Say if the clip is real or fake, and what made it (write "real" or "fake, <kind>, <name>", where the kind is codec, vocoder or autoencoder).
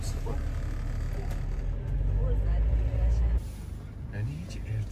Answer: real